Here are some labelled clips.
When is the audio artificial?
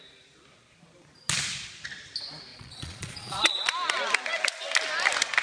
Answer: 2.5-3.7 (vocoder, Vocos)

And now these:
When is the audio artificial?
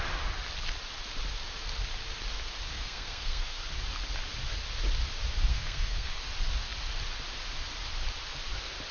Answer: 2.7-3.6 (codec, SNAC); 5.5-6.2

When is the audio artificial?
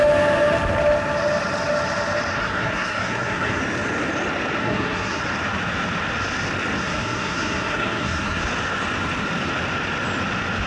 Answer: 2.4-3.6 (codec, SNAC); 4.6-5.2; 6.8-8.4